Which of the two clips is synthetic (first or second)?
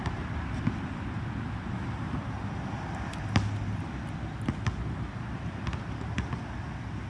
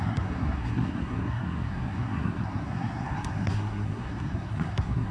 second